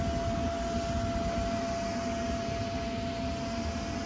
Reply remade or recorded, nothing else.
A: recorded